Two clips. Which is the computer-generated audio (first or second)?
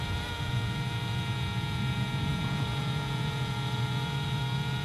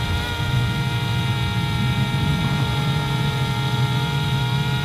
first